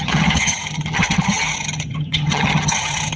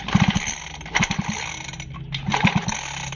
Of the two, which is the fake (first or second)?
first